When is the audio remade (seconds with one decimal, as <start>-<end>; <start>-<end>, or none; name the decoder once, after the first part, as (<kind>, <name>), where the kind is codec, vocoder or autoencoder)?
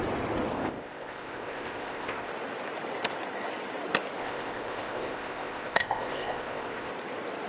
0.5-2.3 (codec, ZipCodec); 4.2-6.9